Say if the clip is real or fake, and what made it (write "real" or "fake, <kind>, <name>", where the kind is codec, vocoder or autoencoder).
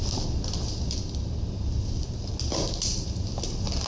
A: real